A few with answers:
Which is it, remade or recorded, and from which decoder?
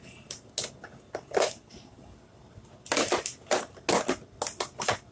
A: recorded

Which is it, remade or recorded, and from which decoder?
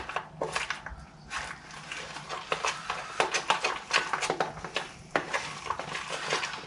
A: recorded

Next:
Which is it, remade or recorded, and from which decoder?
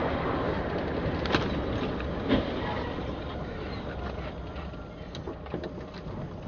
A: recorded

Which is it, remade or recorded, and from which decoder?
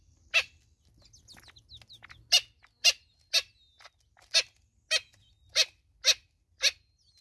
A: recorded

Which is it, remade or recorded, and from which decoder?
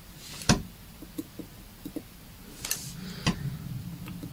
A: recorded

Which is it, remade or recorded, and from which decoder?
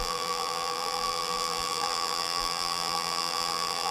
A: remade, vocoder, BigVGAN v2